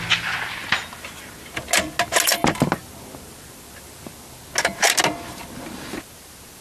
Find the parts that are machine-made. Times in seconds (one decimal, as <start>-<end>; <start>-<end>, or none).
none

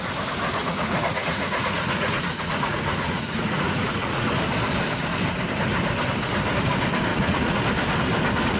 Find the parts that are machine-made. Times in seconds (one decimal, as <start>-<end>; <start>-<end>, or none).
0.6-4.3; 7.1-7.6

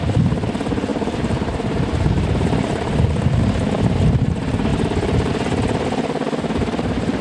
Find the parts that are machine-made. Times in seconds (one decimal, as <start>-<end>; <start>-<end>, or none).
0.9-3.4

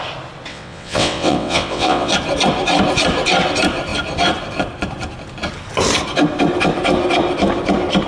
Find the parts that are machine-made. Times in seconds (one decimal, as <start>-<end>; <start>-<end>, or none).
0.5-2.1

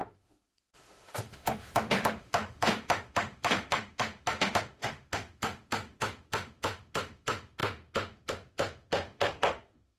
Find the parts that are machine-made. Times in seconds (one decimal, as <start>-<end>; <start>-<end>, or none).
0.0-10.0